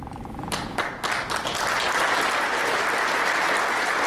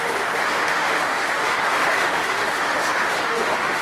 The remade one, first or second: second